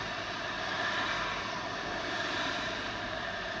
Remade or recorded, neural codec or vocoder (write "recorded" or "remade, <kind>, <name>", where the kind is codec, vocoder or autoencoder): recorded